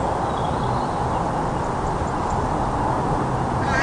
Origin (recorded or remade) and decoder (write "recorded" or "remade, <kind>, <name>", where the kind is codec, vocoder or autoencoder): recorded